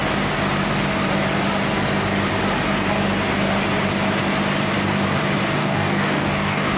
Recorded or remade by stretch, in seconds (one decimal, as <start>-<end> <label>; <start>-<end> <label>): 0.0-5.6 recorded; 5.6-6.8 remade